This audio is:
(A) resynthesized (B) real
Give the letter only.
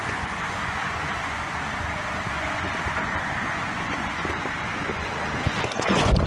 A